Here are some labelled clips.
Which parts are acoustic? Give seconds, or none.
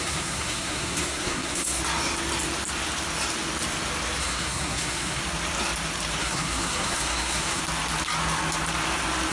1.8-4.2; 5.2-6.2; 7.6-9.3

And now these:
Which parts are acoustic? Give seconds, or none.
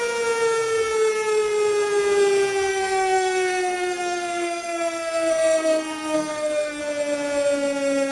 0.0-2.7; 6.8-8.1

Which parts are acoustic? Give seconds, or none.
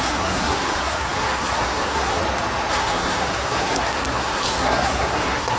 2.2-2.7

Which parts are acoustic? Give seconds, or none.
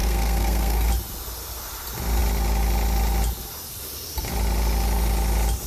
0.9-5.7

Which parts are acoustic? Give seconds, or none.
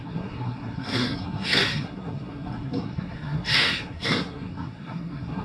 none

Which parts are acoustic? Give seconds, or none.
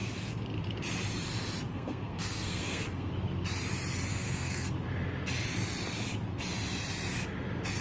0.0-1.7; 3.1-4.1; 4.7-7.8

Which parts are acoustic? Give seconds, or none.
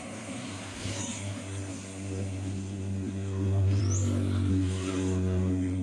3.8-4.5